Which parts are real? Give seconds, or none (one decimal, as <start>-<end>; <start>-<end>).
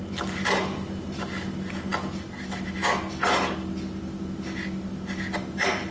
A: 0.0-5.9